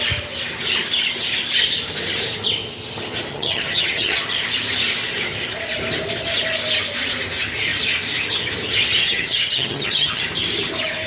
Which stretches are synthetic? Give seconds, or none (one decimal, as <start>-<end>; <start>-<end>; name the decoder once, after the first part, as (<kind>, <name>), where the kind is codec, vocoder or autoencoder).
3.3-4.2 (vocoder, HiFi-GAN); 9.0-10.2